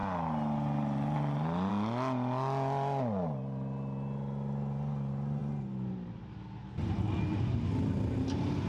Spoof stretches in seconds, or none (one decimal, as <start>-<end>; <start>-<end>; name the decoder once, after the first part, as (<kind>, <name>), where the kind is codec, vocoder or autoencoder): none